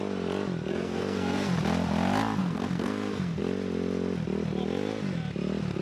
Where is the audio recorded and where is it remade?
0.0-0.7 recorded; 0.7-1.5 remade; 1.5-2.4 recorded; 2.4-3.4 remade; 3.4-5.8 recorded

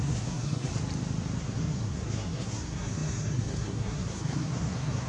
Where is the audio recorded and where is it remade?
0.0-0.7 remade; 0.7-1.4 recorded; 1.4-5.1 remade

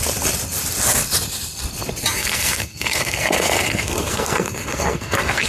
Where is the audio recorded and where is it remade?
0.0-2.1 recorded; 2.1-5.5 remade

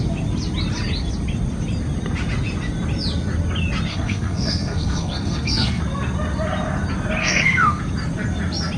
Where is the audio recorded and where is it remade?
0.0-3.9 recorded; 3.9-5.8 remade; 5.8-7.2 recorded; 7.2-7.8 remade; 7.8-8.8 recorded

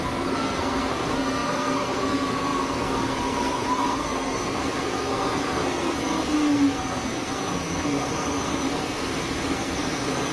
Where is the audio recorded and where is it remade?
0.0-10.3 remade

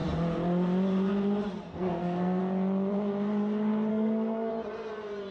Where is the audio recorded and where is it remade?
0.0-1.7 recorded; 1.7-2.4 remade; 2.4-3.9 recorded; 3.9-4.5 remade; 4.5-5.3 recorded